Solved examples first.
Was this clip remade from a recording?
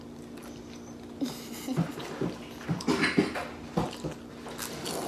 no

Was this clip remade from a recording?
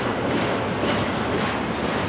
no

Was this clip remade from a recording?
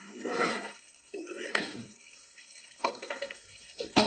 yes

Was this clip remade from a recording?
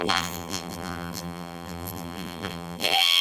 yes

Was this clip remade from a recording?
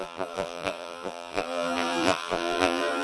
yes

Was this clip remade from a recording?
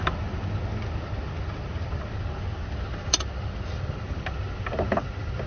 no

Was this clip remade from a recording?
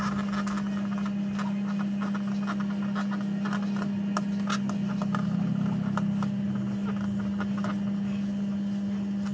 no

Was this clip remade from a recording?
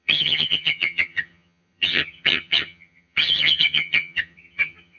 yes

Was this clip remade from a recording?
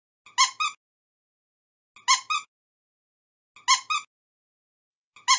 no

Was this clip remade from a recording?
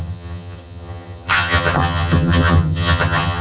yes